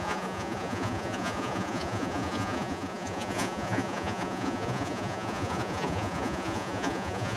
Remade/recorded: remade